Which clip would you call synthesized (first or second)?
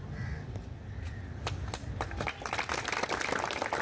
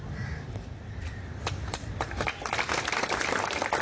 second